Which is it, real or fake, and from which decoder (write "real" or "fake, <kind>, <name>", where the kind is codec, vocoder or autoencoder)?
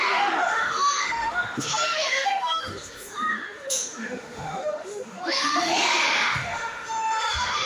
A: fake, autoencoder, DAC-VAE